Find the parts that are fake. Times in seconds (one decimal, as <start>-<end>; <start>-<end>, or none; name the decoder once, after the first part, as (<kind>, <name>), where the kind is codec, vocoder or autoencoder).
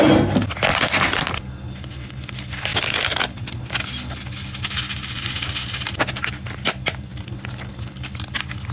0.7-1.3 (vocoder, BigVGAN v2)